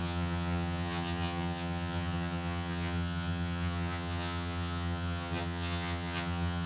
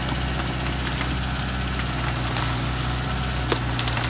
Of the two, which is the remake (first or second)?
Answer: first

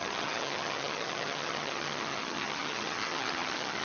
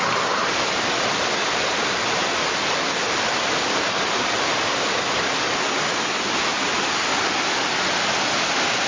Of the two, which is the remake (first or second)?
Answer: first